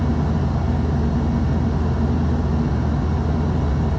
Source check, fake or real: real